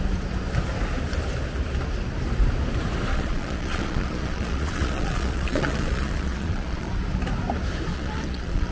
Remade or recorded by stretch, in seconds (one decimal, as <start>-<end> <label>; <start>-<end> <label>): 0.0-3.1 recorded; 3.1-6.9 remade; 6.9-7.9 recorded; 7.9-8.7 remade